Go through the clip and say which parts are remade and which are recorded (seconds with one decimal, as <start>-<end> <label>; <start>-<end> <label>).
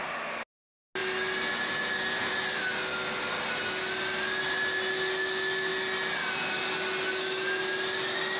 0.0-8.4 recorded